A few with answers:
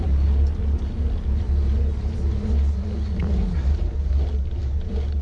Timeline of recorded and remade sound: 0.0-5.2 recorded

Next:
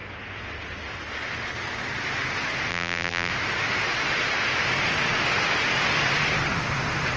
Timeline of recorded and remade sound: 0.0-2.7 recorded; 2.7-3.3 remade; 3.3-7.2 recorded

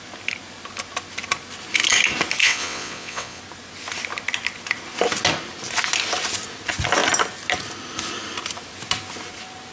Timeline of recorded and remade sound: 0.0-2.4 recorded; 2.4-3.4 remade; 3.4-9.7 recorded